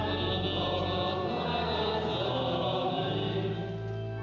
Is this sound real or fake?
real